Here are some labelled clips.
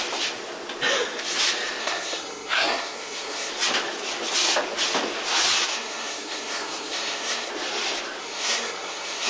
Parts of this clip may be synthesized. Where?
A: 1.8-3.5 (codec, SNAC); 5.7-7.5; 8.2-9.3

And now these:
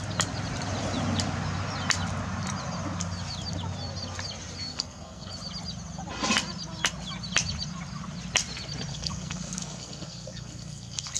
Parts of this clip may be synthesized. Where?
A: 4.7-5.3 (codec, SNAC); 8.9-11.2